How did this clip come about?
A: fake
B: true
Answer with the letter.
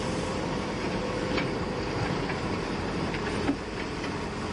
A